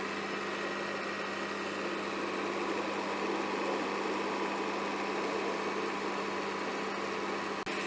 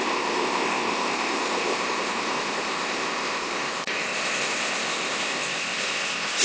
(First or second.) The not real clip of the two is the second